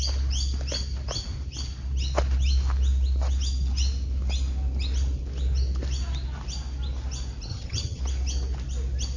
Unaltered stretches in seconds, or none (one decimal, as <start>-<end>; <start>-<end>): 0.0-7.5; 8.0-9.2